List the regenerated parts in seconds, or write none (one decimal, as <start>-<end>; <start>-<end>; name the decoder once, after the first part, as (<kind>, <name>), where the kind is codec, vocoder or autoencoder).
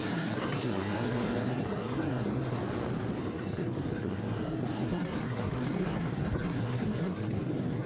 0.0-2.6 (codec, SNAC); 3.2-7.9